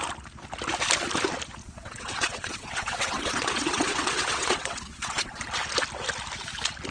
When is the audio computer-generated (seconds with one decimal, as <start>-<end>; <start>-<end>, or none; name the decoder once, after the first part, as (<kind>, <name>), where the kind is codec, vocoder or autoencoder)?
1.6-5.4 (vocoder, WaveNeXt)